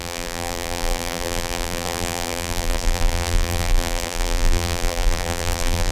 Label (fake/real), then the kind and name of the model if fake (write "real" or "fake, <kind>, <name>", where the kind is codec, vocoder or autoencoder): fake, vocoder, BigVGAN v2